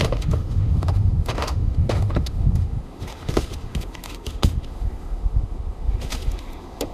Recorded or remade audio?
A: remade